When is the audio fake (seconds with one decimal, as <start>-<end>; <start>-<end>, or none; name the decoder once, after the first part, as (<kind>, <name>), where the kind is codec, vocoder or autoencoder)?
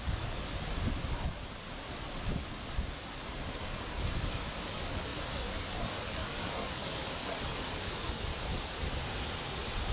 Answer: 0.0-0.4 (codec, DAC); 3.6-8.3